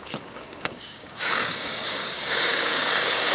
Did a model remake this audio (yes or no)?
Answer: yes